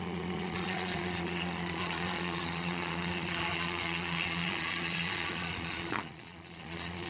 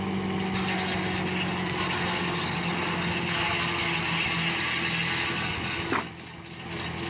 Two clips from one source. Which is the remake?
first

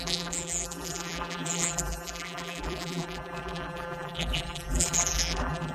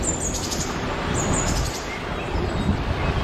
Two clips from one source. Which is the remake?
first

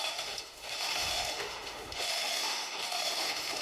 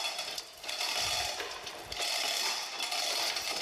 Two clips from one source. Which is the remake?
first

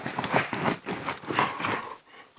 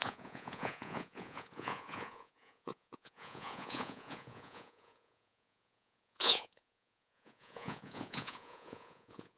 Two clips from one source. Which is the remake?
second